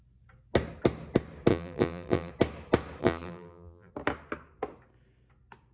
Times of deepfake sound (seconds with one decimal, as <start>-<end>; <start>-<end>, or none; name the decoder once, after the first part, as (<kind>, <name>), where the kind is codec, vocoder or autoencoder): 1.5-2.3 (vocoder, BigVGAN v2); 3.0-3.9